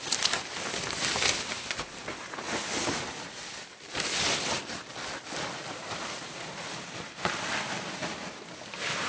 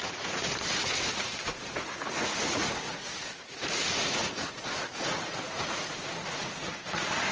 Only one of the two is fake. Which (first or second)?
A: second